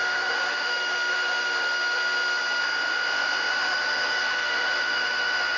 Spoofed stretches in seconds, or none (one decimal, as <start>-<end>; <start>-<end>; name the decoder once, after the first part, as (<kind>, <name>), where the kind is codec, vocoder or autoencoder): 0.0-2.6 (autoencoder, DAC-VAE); 3.5-5.6